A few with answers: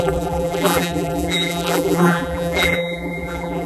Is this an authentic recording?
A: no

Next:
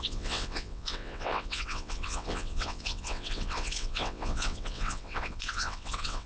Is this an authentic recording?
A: no